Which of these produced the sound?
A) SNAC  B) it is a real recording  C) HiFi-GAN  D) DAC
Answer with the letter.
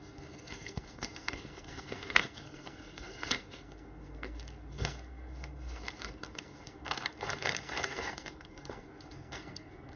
A